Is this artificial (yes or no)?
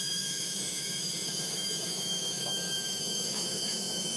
yes